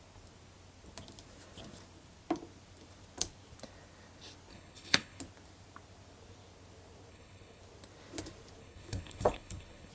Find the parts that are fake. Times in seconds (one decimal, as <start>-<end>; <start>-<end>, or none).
4.5-5.2; 7.1-7.6; 8.6-9.9